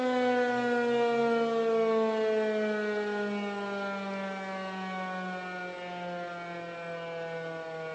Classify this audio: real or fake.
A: real